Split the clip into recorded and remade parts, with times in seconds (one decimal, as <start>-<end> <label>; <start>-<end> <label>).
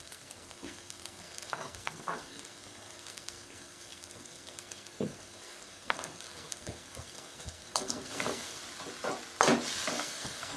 0.0-8.6 remade; 8.6-9.9 recorded; 9.9-10.6 remade